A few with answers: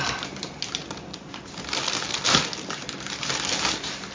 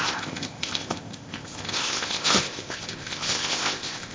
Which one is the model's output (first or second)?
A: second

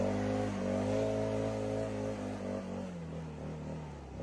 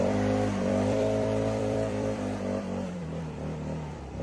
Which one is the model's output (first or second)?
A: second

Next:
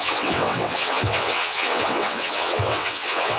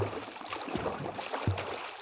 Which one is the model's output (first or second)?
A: first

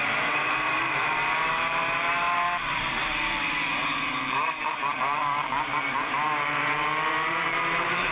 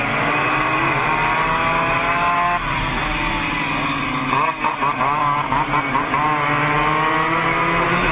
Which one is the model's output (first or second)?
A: first